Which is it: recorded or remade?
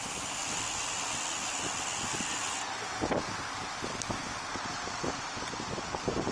recorded